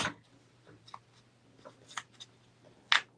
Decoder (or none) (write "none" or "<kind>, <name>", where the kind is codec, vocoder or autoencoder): none